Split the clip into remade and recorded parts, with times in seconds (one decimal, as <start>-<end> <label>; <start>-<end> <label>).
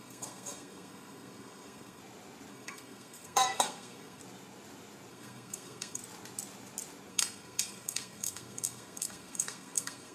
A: 0.0-2.0 remade; 2.0-2.5 recorded; 2.5-4.2 remade; 4.2-5.1 recorded; 5.1-6.0 remade; 6.0-7.1 recorded; 7.1-10.1 remade